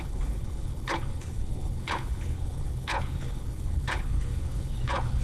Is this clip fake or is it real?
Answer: fake